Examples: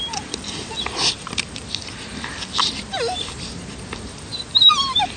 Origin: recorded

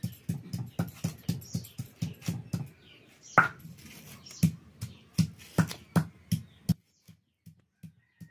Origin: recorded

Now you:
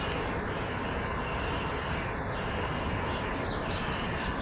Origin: recorded